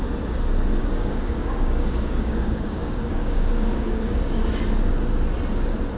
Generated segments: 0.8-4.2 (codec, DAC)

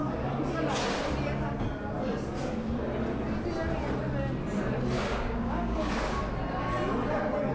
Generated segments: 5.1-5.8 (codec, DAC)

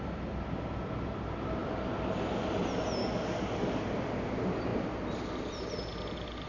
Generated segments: 3.0-3.8 (codec, DAC)

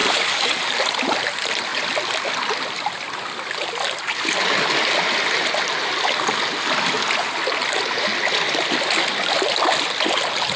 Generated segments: 0.0-0.6 (codec, DAC)